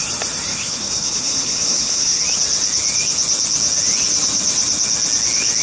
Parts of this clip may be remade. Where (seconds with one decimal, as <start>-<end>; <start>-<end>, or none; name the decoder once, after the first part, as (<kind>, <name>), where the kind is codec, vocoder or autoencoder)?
0.5-2.2 (codec, HILCodec)